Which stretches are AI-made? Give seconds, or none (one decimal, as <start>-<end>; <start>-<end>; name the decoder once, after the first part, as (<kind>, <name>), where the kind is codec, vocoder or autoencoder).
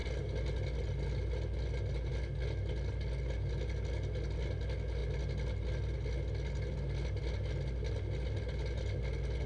none